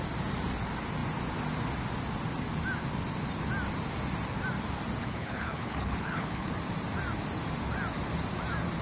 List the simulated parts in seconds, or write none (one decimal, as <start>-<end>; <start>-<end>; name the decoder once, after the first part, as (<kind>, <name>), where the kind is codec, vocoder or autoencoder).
5.0-6.5 (codec, HILCodec)